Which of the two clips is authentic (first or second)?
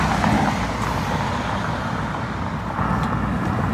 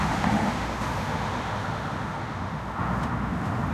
first